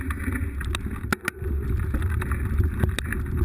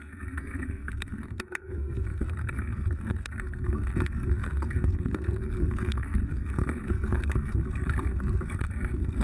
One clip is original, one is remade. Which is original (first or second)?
first